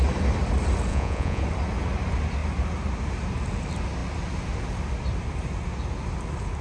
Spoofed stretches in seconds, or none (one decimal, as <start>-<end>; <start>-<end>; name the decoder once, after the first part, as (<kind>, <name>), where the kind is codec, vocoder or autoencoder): 0.9-1.4 (vocoder, Vocos)